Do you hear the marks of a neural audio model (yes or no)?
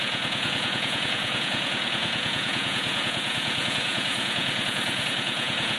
yes